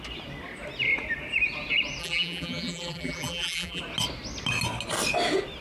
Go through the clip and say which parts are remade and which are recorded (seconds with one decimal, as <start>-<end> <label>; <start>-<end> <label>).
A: 0.0-2.0 recorded; 2.0-3.8 remade; 3.8-5.6 recorded